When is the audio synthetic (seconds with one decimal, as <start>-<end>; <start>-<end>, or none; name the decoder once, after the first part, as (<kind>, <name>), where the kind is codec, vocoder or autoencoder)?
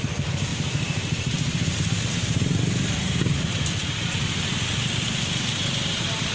0.0-6.3 (vocoder, BigVGAN v2)